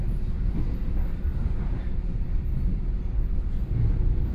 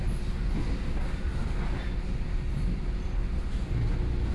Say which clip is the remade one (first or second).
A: first